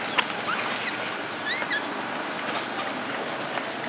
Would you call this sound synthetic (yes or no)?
no